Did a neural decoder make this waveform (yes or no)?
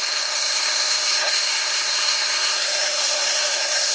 yes